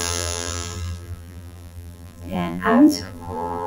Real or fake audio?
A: fake